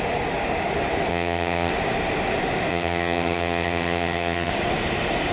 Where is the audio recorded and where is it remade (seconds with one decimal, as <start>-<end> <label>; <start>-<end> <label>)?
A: 0.0-1.1 recorded; 1.1-1.7 remade; 1.7-2.7 recorded; 2.7-4.5 remade; 4.5-5.3 recorded